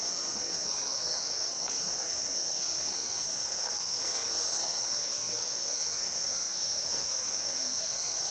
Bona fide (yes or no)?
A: no